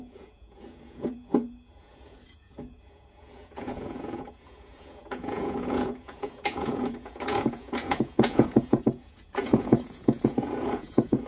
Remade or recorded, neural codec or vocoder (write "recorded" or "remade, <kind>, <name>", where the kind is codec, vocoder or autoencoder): remade, vocoder, Vocos